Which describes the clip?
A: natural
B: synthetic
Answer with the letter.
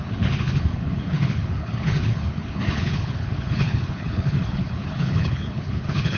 B